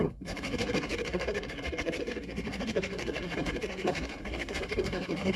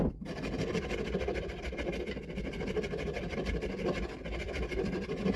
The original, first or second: second